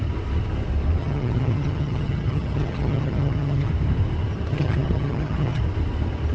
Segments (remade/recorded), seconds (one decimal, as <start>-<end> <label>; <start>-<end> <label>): 0.0-1.0 recorded; 1.0-3.7 remade; 3.7-4.5 recorded; 4.5-5.6 remade; 5.6-6.3 recorded